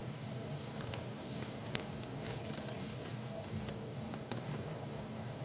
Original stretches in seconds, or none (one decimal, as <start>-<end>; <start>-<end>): 2.4-2.8